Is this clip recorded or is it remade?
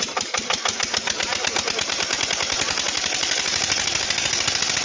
remade